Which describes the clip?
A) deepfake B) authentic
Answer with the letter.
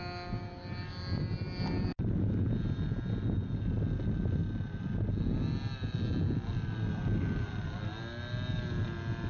B